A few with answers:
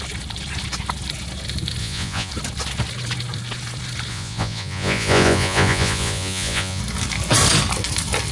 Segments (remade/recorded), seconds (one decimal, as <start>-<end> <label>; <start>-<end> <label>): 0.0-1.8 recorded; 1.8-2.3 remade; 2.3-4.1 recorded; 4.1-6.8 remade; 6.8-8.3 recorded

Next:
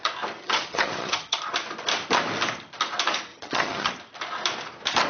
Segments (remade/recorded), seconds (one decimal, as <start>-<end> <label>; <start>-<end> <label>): 0.0-0.4 recorded; 0.4-1.4 remade; 1.4-3.3 recorded; 3.3-3.9 remade; 3.9-5.1 recorded

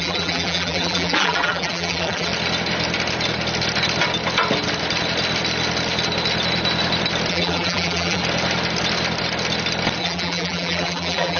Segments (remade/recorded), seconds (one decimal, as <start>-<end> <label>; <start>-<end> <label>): 0.0-2.3 remade; 2.3-7.3 recorded; 7.3-8.2 remade; 8.2-10.0 recorded; 10.0-11.4 remade

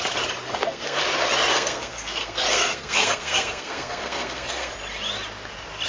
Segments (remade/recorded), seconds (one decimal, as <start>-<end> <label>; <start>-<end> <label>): 0.0-0.5 recorded; 0.5-1.0 remade; 1.0-1.5 recorded; 1.5-4.7 remade; 4.7-5.9 recorded